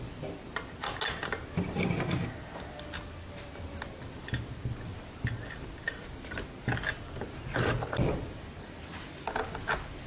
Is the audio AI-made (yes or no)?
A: no